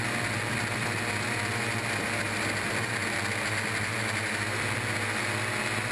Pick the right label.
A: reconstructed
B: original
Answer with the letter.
B